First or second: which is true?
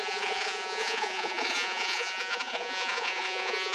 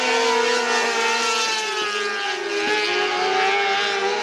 second